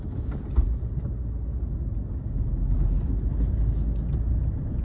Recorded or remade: recorded